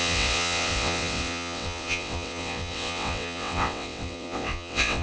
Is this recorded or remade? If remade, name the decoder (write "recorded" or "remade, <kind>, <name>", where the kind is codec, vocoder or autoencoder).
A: remade, vocoder, WaveNeXt